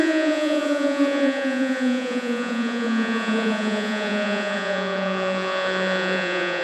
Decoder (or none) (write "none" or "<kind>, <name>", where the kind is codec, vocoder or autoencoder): vocoder, Vocos